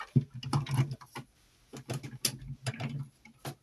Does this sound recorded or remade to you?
recorded